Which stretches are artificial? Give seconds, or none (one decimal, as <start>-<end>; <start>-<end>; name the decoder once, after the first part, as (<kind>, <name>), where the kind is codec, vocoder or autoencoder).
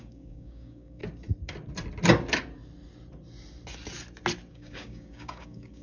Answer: 0.0-1.0 (codec, DAC); 4.5-5.8